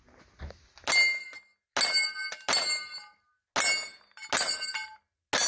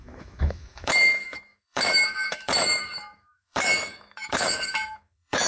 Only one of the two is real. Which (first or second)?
first